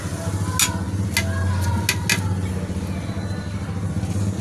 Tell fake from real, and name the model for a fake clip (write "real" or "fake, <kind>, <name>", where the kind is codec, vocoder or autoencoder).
real